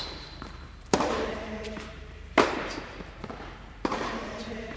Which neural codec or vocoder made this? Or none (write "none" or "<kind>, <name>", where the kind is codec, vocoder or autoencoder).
vocoder, BigVGAN v2